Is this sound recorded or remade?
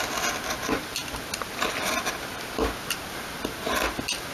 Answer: recorded